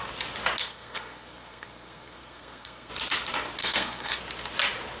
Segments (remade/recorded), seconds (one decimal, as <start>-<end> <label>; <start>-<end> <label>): 0.0-0.6 recorded; 0.6-2.9 remade; 2.9-3.6 recorded; 3.6-4.2 remade; 4.2-5.0 recorded